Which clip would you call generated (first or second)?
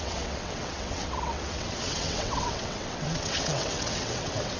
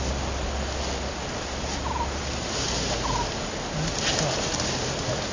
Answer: first